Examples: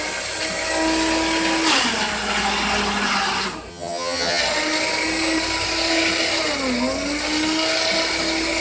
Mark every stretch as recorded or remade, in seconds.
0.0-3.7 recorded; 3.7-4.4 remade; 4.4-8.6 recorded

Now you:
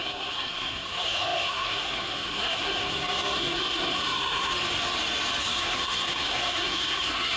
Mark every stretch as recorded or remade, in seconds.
0.0-4.5 remade; 4.5-5.4 recorded; 5.4-7.4 remade

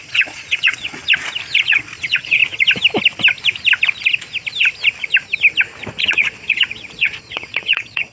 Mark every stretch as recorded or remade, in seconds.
0.0-1.0 remade; 1.0-1.6 recorded; 1.6-2.4 remade; 2.4-6.0 recorded; 6.0-8.1 remade

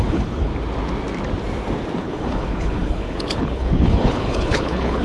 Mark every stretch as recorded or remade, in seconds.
0.0-0.5 remade; 0.5-2.0 recorded; 2.0-5.0 remade

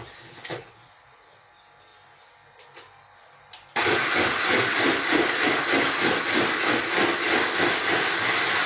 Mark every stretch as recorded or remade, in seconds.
0.0-0.5 recorded; 0.5-1.5 remade; 1.5-8.7 recorded

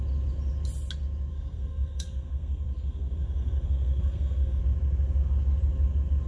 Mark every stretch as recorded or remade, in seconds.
0.0-1.3 recorded; 1.3-4.6 remade; 4.6-6.3 recorded

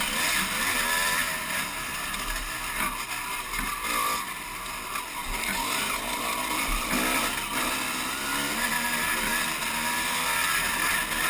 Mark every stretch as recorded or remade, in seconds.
0.0-11.3 recorded

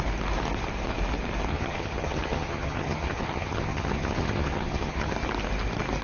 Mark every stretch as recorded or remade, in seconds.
0.0-1.5 recorded; 1.5-5.1 remade; 5.1-6.0 recorded